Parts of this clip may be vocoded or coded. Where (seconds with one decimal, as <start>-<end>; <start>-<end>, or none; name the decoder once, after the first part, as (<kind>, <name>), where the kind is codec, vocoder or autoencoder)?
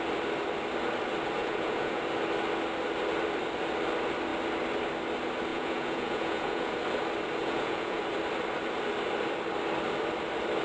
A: 1.4-2.0 (vocoder, Vocos); 5.5-6.7; 7.4-8.0